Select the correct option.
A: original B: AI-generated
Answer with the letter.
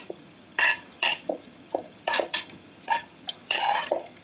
B